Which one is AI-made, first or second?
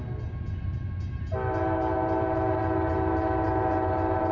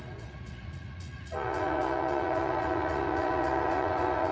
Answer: second